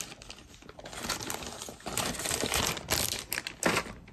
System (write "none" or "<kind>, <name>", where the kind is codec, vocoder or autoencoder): none